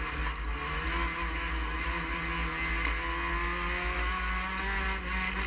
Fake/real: real